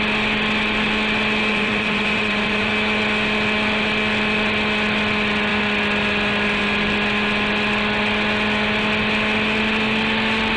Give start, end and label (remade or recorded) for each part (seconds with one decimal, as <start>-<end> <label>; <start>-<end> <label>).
0.0-1.5 recorded; 1.5-2.7 remade; 2.7-10.6 recorded